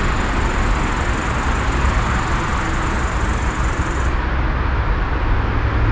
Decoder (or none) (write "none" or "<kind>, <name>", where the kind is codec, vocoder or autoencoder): none